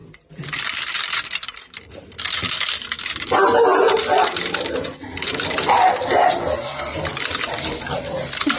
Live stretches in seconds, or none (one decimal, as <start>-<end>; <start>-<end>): 1.9-8.6